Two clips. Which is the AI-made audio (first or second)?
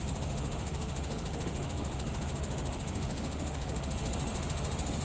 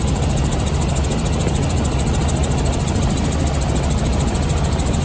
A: first